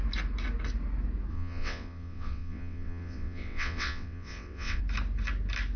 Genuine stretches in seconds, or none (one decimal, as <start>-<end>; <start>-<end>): 0.0-1.3; 4.8-5.8